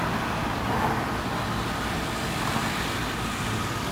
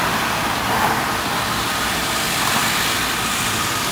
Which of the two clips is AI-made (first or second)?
second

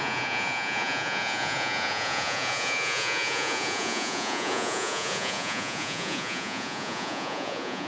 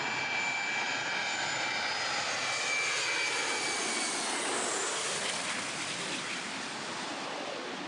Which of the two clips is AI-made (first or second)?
first